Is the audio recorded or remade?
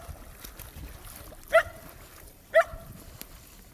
recorded